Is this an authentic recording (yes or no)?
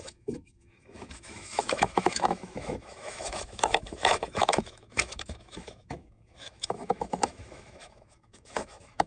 no